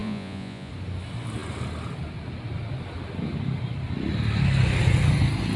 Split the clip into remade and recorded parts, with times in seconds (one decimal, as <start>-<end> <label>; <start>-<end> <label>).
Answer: 0.0-0.7 remade; 0.7-5.6 recorded